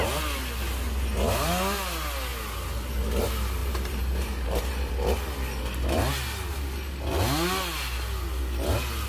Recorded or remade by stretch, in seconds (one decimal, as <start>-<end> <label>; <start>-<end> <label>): 0.0-3.6 recorded; 3.6-4.9 remade; 4.9-9.1 recorded